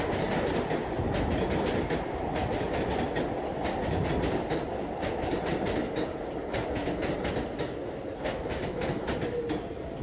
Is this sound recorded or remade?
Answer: recorded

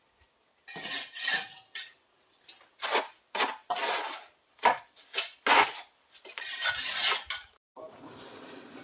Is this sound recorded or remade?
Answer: recorded